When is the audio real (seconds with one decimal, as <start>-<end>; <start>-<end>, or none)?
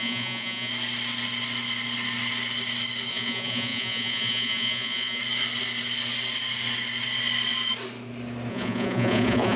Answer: 0.7-3.1; 5.2-8.5